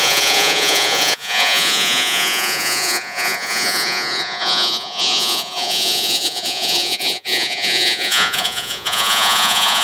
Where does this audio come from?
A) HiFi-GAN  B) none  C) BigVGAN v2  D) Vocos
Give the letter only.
D